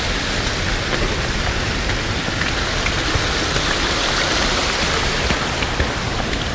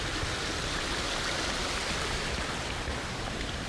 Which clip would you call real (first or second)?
first